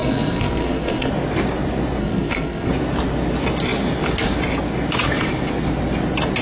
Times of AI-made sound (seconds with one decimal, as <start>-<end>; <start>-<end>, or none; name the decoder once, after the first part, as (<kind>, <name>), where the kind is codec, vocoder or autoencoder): 0.0-1.1 (codec, SNAC); 2.0-2.7